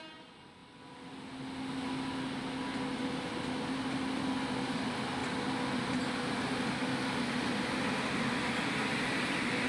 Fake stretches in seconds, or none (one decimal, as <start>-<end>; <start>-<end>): none